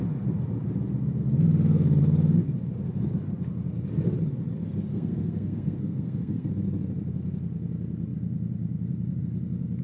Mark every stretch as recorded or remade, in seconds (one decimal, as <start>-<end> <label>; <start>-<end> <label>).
0.0-4.9 recorded; 4.9-6.5 remade; 6.5-9.8 recorded

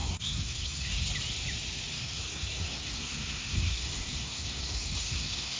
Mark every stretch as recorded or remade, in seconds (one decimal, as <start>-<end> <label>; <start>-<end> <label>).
0.0-1.1 remade; 1.1-1.9 recorded; 1.9-5.6 remade

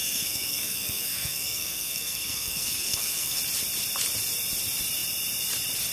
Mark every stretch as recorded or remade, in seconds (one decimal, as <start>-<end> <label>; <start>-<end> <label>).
0.0-3.4 remade; 3.4-5.9 recorded

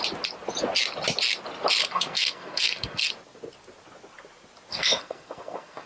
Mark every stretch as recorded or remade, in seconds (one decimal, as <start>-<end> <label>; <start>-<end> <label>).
0.0-1.8 recorded; 1.8-3.1 remade; 3.1-4.7 recorded; 4.7-5.9 remade

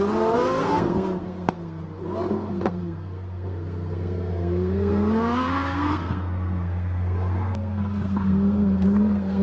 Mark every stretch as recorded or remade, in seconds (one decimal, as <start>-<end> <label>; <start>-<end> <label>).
0.0-1.8 remade; 1.8-2.5 recorded; 2.5-9.4 remade